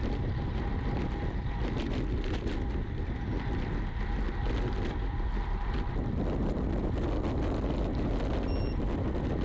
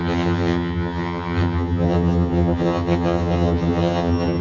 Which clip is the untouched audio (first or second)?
first